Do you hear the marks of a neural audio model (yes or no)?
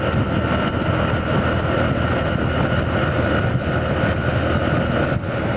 no